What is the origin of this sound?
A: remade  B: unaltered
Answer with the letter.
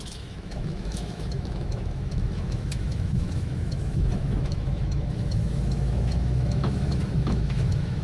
A